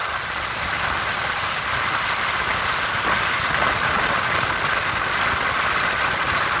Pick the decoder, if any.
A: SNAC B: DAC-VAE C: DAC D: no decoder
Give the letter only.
D